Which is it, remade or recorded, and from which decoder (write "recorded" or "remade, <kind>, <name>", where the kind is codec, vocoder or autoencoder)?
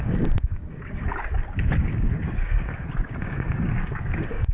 remade, codec, DAC